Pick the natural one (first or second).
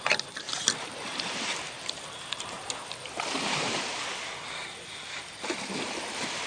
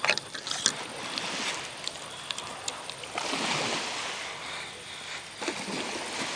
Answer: second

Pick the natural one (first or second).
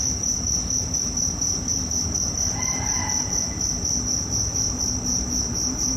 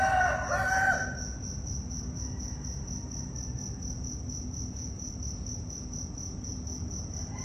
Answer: second